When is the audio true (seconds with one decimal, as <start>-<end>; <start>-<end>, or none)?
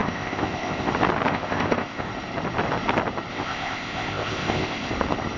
0.9-1.3; 2.1-3.3; 4.9-5.4